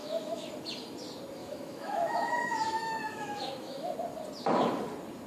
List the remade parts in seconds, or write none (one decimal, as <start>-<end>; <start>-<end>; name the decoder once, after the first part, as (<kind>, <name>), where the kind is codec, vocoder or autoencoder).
0.0-0.5 (autoencoder, DAC-VAE); 1.4-3.9